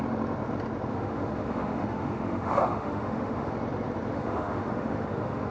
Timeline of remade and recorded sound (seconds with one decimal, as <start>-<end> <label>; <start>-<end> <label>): 0.0-0.9 recorded; 0.9-3.5 remade; 3.5-4.1 recorded; 4.1-5.5 remade

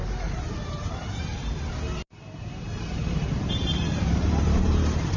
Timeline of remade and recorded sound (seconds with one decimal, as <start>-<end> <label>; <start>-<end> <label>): 0.0-1.3 remade; 1.3-2.4 recorded; 2.4-5.2 remade

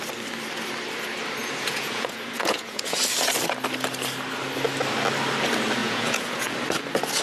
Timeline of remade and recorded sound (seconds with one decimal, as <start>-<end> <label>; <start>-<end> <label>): 0.0-1.4 recorded; 1.4-3.0 remade; 3.0-5.8 recorded; 5.8-6.5 remade; 6.5-7.2 recorded

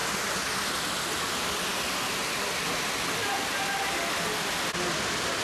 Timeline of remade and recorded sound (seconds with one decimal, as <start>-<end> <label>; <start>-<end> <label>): 0.0-5.4 recorded

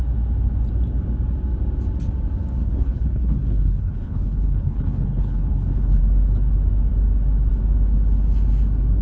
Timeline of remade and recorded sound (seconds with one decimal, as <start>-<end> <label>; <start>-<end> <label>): 0.0-2.6 recorded; 2.6-6.0 remade; 6.0-9.0 recorded